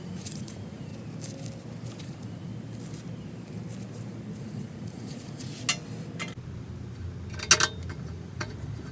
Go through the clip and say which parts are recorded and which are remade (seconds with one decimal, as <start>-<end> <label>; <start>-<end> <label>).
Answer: 0.0-0.9 remade; 0.9-2.0 recorded; 2.0-2.5 remade; 2.5-4.4 recorded; 4.4-5.5 remade; 5.5-8.0 recorded; 8.0-8.9 remade